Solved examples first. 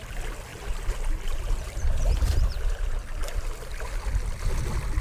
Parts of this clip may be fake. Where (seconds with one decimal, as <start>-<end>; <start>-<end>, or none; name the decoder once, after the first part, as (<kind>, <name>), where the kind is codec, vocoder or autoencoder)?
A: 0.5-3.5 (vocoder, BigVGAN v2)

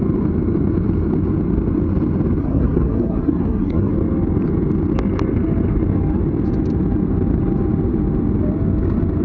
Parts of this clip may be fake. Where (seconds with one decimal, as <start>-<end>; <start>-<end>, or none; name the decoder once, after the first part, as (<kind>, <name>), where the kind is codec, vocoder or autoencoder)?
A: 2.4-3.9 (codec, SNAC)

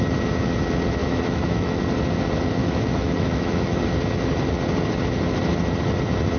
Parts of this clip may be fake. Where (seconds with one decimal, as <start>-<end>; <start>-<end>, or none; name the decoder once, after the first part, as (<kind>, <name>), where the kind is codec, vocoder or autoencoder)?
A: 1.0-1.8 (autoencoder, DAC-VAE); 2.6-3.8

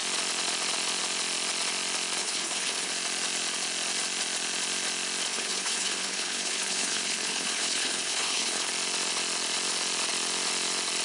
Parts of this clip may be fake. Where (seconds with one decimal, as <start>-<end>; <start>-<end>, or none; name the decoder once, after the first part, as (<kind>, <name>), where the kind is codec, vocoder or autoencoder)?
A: 2.2-2.9 (codec, HILCodec); 5.3-8.7